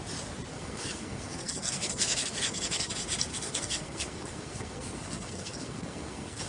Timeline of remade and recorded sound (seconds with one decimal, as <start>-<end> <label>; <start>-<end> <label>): 0.0-0.5 recorded; 0.5-2.9 remade; 2.9-3.3 recorded; 3.3-6.5 remade